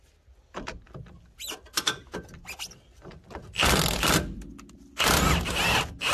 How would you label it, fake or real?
real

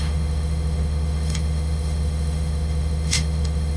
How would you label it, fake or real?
fake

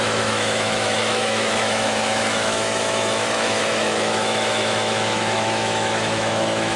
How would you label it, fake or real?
fake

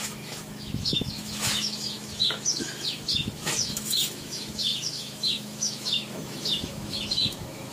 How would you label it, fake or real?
fake